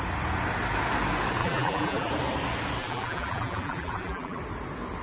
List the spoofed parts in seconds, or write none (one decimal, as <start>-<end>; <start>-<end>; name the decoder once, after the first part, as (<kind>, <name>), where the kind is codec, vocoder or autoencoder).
1.4-2.1 (vocoder, BigVGAN v2); 2.8-4.4